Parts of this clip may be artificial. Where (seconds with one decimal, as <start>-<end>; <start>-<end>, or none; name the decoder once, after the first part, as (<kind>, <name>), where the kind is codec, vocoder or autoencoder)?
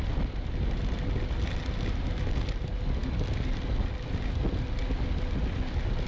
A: none